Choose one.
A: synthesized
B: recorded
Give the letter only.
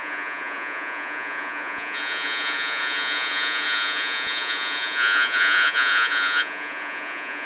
A